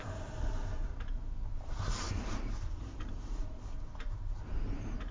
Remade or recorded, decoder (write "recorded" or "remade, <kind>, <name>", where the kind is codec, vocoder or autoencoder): remade, vocoder, BigVGAN v2